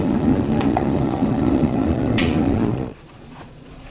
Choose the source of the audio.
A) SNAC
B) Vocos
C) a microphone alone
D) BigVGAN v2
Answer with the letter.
B